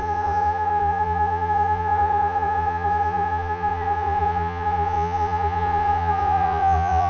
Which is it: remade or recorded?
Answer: remade